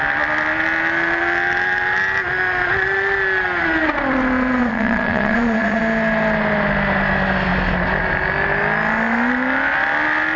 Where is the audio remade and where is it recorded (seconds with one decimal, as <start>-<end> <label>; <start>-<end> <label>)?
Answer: 0.0-4.6 recorded; 4.6-5.8 remade; 5.8-10.4 recorded